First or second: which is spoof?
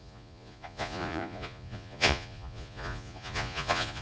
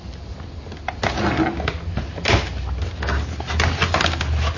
first